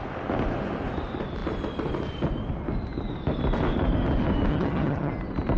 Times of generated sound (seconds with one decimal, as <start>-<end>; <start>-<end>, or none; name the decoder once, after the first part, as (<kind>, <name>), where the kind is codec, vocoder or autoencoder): 4.5-5.1 (vocoder, HiFi-GAN)